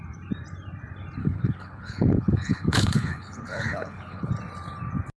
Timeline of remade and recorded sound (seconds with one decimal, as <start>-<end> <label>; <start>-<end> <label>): 0.0-1.2 recorded; 1.2-4.3 remade; 4.3-5.2 recorded